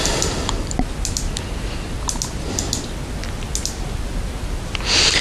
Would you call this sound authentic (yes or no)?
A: yes